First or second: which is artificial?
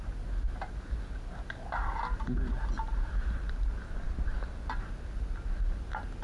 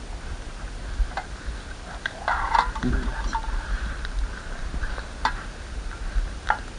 second